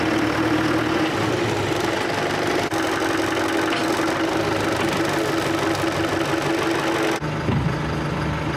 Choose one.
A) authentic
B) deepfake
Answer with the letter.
A